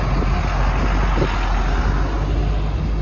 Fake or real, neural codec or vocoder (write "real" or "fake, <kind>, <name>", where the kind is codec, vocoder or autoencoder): real